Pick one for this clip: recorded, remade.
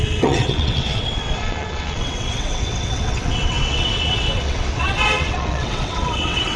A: remade